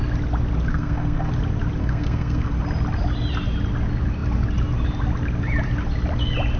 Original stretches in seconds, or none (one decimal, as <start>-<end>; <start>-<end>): 0.0-0.7; 1.3-1.8; 2.5-6.6